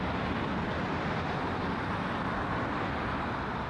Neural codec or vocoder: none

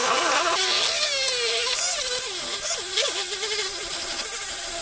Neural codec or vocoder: none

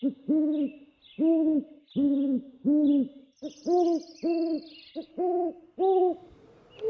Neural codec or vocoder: none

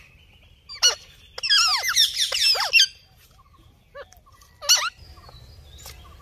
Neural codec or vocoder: none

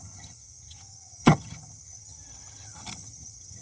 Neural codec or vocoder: vocoder, HiFi-GAN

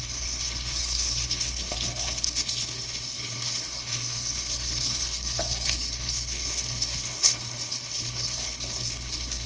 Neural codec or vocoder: codec, HILCodec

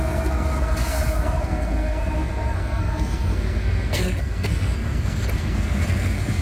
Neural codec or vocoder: codec, SNAC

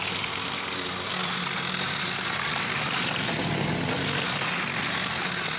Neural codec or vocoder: none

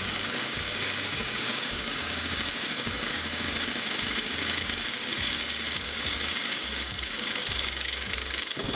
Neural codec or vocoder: codec, DAC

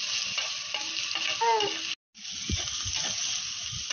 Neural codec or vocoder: none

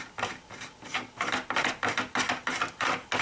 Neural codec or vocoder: none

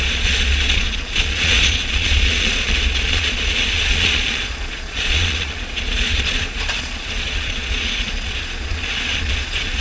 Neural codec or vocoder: vocoder, Vocos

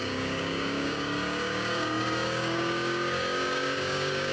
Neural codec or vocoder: codec, DAC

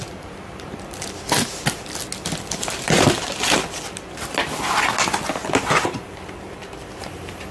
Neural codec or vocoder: none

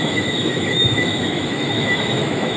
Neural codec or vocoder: autoencoder, DAC-VAE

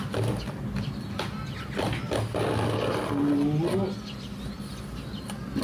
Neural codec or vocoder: none